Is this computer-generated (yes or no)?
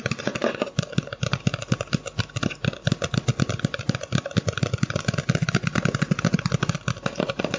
no